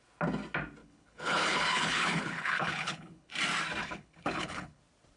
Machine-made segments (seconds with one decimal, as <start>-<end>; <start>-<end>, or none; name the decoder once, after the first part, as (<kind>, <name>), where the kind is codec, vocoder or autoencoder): 0.8-3.3 (codec, HILCodec); 3.8-4.8